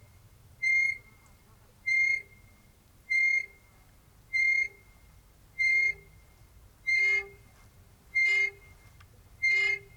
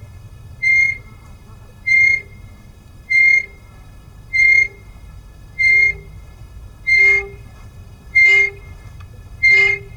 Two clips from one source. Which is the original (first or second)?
first